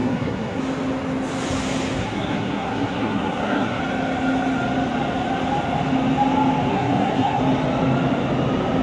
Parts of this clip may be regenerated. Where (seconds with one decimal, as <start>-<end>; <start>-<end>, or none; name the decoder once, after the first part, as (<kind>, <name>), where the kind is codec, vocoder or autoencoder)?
0.0-0.6 (codec, SNAC); 2.0-3.8; 6.7-7.4